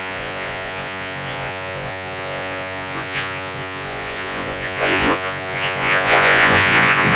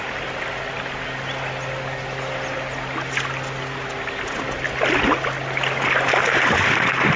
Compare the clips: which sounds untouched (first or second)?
second